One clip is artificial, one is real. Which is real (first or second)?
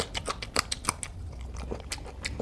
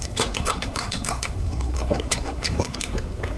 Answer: first